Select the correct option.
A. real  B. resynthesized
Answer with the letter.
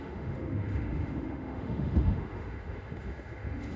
B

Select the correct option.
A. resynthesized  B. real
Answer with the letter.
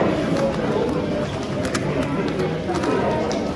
B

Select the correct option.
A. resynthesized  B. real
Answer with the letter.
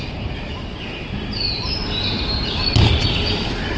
B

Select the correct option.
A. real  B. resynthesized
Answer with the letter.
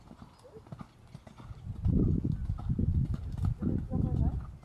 A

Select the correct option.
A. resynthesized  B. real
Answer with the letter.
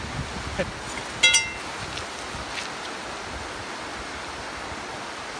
B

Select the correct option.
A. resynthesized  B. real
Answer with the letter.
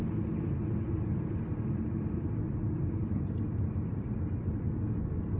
B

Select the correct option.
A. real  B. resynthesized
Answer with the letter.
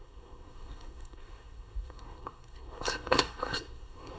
B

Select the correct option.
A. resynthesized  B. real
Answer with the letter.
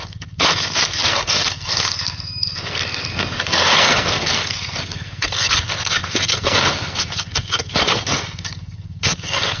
A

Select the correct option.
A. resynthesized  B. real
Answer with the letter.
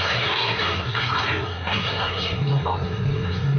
A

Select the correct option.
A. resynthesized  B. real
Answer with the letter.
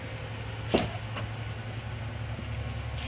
B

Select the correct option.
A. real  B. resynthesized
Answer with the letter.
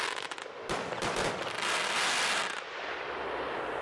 A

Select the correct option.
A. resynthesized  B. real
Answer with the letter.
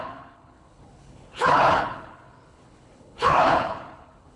A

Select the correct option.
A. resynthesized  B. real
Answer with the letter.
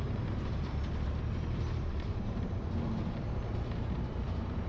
A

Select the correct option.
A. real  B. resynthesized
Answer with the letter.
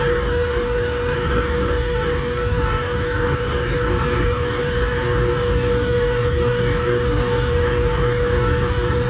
B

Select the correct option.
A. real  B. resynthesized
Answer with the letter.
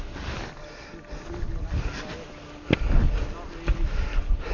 A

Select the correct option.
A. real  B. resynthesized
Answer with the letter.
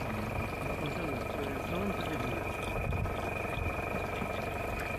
A